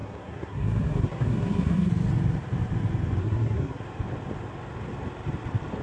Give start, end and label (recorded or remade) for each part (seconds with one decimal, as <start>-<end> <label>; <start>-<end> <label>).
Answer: 0.0-1.9 remade; 1.9-3.2 recorded; 3.2-3.8 remade; 3.8-5.8 recorded